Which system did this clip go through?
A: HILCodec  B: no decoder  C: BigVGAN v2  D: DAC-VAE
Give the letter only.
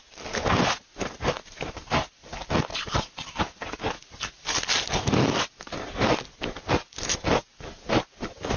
B